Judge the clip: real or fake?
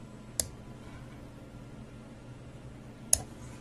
real